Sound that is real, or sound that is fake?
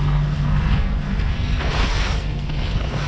fake